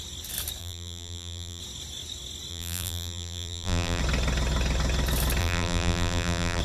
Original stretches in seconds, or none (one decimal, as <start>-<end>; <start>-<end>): 0.0-0.6; 1.6-2.5; 4.0-5.4